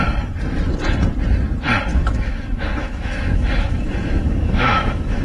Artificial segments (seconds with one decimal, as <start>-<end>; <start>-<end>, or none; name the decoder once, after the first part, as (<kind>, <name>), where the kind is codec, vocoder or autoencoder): 1.9-5.2 (autoencoder, DAC-VAE)